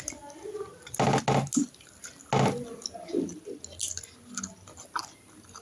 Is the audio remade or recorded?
recorded